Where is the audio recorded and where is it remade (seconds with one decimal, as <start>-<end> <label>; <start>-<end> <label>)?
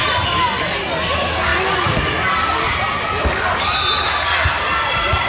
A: 0.0-5.3 recorded